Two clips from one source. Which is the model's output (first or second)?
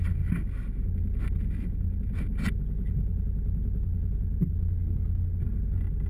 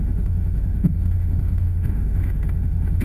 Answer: second